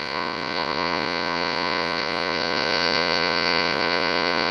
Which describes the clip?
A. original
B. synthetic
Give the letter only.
B